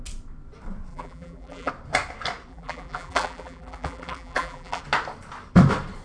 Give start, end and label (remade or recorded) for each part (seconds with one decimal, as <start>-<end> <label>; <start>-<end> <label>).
0.0-0.9 recorded; 0.9-1.7 remade; 1.7-2.5 recorded; 2.5-4.8 remade; 4.8-6.0 recorded